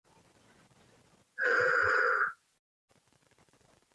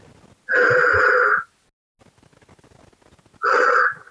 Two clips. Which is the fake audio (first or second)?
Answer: first